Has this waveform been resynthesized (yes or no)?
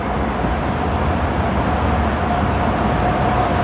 no